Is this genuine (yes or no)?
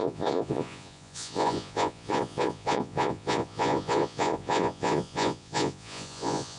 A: no